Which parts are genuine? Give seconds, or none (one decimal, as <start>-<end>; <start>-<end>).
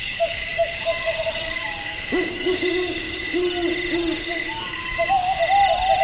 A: 3.4-4.2; 5.4-6.0